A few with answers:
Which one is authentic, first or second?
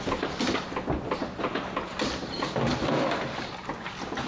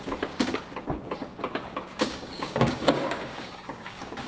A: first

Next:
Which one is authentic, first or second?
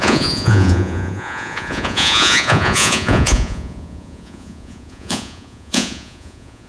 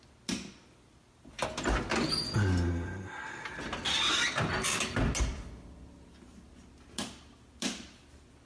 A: second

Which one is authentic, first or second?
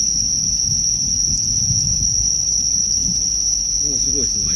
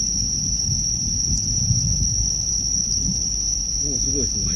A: first